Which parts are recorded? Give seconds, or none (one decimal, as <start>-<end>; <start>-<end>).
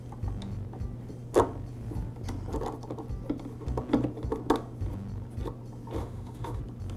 0.0-6.0; 6.6-7.0